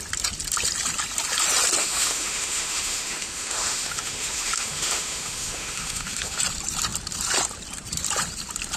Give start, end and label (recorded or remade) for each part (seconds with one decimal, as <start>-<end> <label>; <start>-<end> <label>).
0.0-1.8 recorded; 1.8-6.4 remade; 6.4-8.8 recorded